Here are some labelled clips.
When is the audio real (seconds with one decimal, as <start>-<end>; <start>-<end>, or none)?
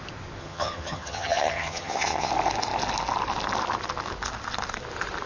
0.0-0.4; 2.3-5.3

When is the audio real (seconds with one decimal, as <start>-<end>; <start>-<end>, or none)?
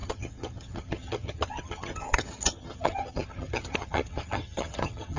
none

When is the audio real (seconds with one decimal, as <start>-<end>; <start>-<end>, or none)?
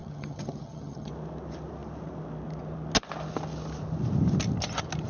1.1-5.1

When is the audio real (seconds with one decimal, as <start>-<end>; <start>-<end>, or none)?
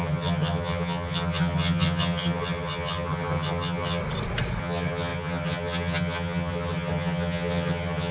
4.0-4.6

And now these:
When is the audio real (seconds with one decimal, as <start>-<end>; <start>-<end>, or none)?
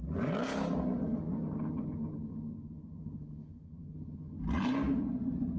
0.0-1.0; 4.4-5.6